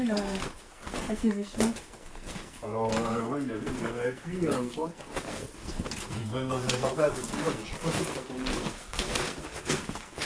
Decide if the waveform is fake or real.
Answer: fake